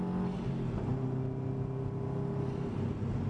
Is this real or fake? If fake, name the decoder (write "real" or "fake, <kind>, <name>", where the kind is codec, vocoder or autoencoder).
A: real